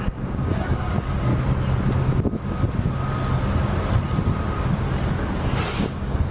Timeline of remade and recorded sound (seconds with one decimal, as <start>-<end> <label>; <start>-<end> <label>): 0.0-1.3 remade; 1.3-5.1 recorded; 5.1-6.3 remade